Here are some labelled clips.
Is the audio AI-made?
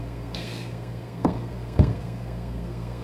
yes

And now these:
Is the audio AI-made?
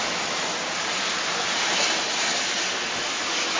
no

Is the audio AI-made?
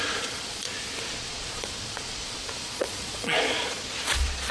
yes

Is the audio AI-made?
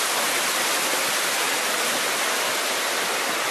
no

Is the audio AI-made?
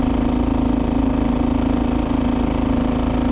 no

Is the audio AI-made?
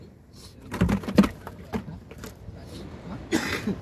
yes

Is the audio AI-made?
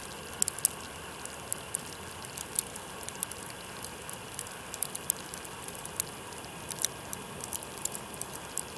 no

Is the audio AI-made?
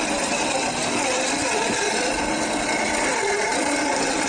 yes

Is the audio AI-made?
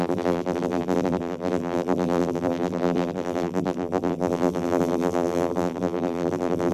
yes